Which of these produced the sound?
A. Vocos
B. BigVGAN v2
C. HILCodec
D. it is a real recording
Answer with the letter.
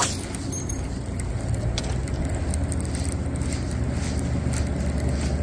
D